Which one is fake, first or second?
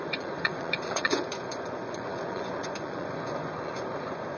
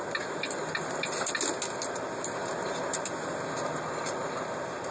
first